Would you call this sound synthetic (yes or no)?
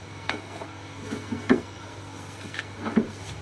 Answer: yes